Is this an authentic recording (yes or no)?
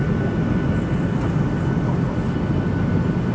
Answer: yes